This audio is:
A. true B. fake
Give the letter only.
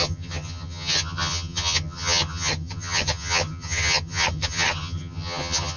B